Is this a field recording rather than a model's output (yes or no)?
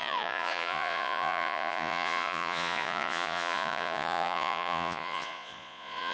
no